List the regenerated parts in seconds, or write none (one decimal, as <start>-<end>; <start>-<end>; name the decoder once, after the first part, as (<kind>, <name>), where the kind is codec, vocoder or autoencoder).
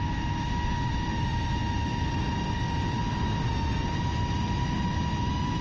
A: none